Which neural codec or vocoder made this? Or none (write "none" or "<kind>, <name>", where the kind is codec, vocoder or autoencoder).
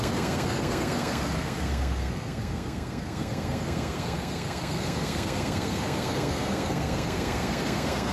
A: codec, SNAC